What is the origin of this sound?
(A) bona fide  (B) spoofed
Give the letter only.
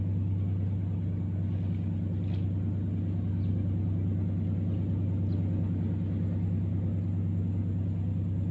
A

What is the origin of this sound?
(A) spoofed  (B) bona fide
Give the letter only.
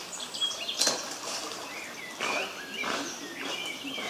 B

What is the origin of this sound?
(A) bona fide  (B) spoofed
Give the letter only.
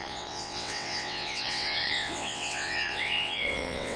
B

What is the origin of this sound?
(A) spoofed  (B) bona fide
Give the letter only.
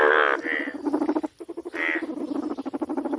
B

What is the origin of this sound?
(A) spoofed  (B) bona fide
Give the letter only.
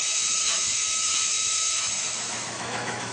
A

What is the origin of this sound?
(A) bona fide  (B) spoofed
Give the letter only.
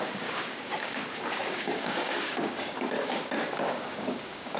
B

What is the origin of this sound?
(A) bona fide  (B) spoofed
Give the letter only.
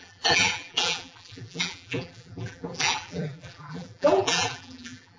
B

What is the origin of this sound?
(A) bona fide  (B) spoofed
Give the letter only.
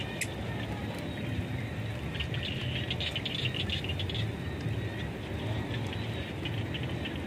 A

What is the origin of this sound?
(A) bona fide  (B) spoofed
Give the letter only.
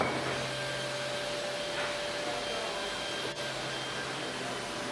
A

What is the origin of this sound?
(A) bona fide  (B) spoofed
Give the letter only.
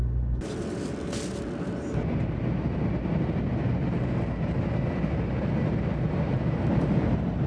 A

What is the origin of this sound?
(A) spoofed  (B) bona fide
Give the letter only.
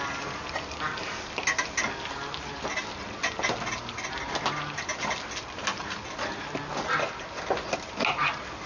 B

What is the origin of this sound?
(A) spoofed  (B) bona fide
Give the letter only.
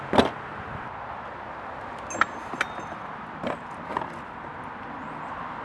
B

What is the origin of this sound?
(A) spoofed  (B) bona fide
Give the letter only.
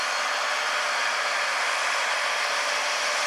B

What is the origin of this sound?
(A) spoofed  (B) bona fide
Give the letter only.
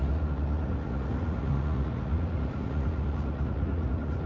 A